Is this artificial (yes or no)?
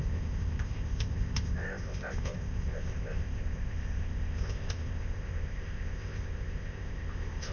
yes